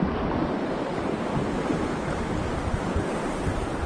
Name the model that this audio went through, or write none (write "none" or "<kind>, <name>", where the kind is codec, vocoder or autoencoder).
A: none